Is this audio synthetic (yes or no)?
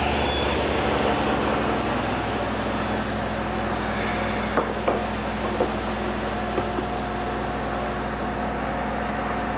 no